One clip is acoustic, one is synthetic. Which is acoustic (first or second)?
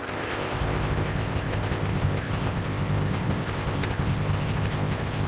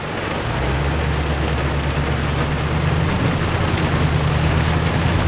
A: second